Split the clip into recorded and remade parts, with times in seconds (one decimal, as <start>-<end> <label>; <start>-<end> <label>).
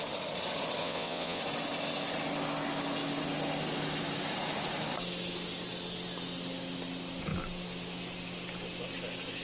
0.0-0.8 recorded; 0.8-1.4 remade; 1.4-9.4 recorded